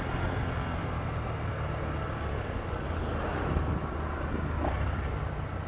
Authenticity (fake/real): real